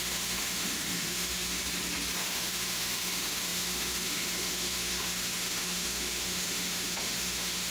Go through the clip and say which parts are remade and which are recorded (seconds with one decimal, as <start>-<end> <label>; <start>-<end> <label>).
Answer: 0.0-1.6 remade; 1.6-2.2 recorded; 2.2-7.7 remade